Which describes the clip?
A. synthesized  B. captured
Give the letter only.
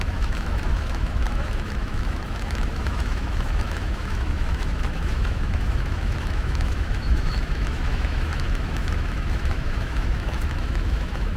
A